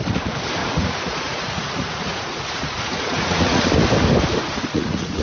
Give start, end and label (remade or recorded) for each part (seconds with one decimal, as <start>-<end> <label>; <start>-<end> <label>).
0.0-0.6 recorded; 0.6-3.7 remade; 3.7-4.4 recorded; 4.4-5.2 remade